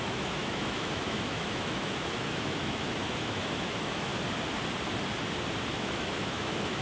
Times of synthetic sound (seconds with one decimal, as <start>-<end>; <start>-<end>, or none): 0.0-4.1; 5.7-6.8